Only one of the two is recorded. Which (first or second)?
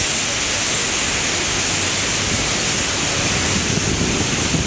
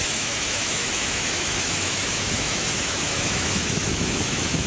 first